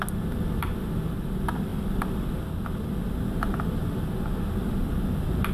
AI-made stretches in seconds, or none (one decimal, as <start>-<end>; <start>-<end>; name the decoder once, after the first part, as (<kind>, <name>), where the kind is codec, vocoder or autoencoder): none